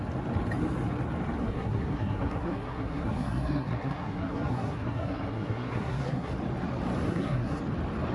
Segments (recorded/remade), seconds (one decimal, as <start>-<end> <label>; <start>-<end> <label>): 0.0-1.4 recorded; 1.4-6.3 remade; 6.3-7.1 recorded; 7.1-7.6 remade; 7.6-8.1 recorded